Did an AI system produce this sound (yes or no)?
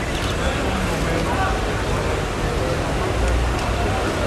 no